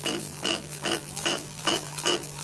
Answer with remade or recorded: remade